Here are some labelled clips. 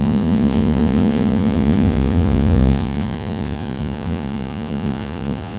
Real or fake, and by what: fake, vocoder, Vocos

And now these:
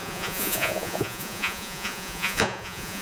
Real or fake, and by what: fake, vocoder, Vocos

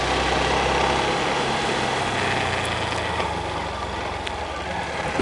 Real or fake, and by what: real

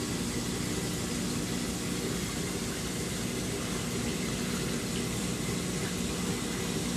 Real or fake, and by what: real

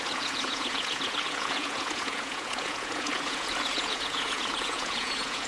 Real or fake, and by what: fake, vocoder, Vocos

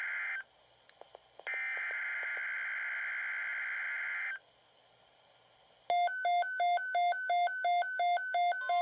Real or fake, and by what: real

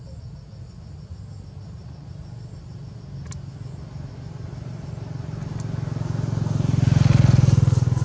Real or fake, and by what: real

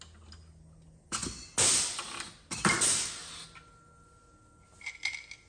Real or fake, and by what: real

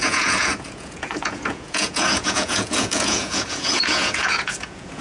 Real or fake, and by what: fake, vocoder, Vocos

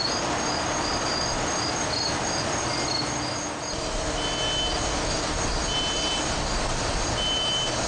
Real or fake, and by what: real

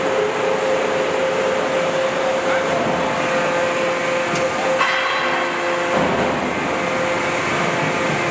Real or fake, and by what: real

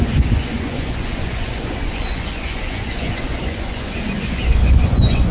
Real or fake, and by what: fake, vocoder, Vocos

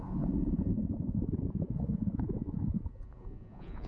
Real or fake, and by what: fake, vocoder, Vocos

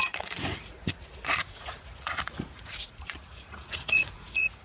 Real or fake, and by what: fake, vocoder, Vocos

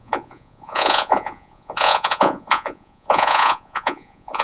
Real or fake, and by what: fake, vocoder, Vocos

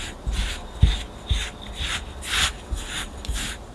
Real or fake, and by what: real